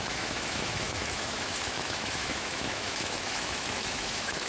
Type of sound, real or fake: fake